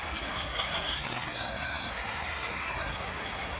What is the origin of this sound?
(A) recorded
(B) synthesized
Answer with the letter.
B